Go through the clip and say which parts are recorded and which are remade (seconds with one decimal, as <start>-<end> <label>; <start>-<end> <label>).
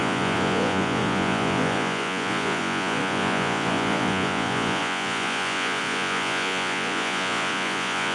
0.0-8.1 remade